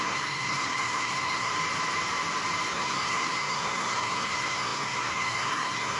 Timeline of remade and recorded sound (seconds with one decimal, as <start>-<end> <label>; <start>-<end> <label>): 0.0-1.5 remade; 1.5-2.7 recorded; 2.7-6.0 remade